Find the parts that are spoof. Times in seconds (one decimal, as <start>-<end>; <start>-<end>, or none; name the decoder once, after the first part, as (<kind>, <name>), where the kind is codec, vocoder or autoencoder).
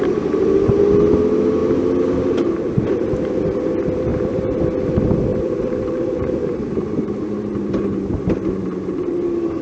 4.1-4.6 (vocoder, BigVGAN v2); 5.3-9.1